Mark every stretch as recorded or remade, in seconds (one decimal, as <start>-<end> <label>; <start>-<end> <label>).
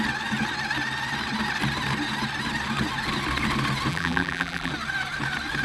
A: 0.0-3.9 recorded; 3.9-4.7 remade; 4.7-5.6 recorded